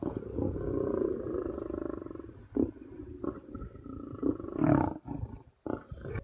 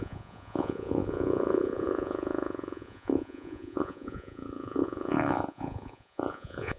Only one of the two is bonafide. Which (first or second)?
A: first